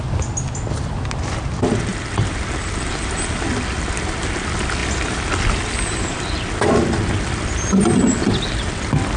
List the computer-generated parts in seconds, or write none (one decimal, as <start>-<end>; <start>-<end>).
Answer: none